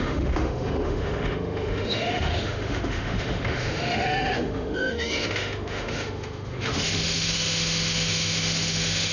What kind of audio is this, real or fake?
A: fake